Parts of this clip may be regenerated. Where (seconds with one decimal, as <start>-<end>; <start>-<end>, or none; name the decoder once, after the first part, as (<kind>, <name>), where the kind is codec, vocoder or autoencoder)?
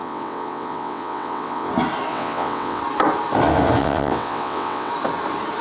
0.0-1.7 (vocoder, WaveNeXt); 2.1-2.8; 3.8-4.9